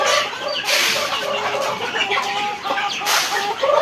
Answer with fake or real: real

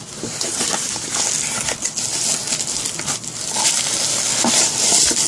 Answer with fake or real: real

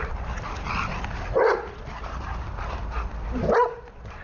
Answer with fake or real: real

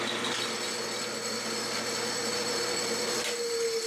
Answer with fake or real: real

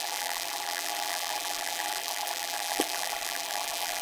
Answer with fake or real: fake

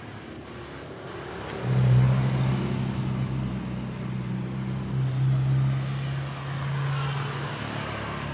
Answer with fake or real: real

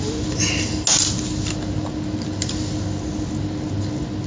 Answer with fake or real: real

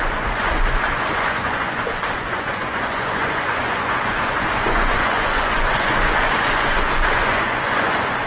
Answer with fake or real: fake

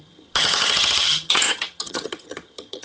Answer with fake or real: fake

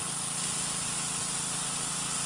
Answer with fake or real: real